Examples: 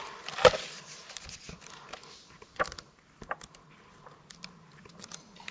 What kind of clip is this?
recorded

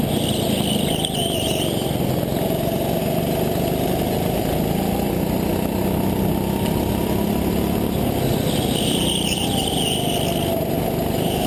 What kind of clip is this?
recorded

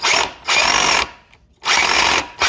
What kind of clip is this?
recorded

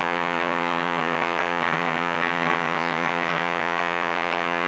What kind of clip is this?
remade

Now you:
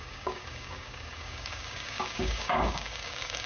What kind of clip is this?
remade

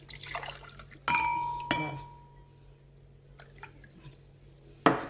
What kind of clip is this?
recorded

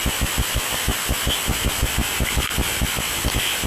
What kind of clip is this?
recorded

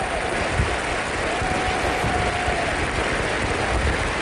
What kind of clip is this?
recorded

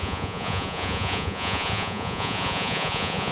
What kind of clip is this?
remade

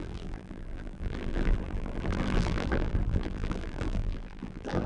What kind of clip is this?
remade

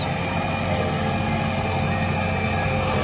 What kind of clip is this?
recorded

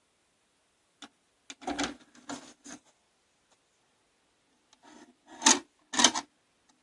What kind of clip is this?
recorded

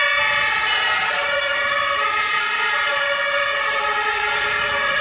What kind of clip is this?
remade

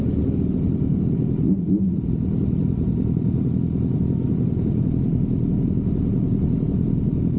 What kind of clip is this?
recorded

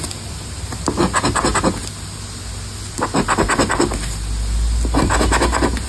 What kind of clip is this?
recorded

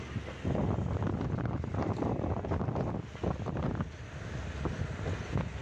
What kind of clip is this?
recorded